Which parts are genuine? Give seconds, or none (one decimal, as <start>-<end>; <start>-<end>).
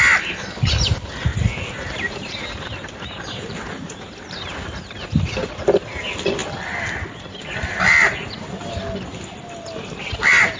0.0-1.3; 4.5-10.6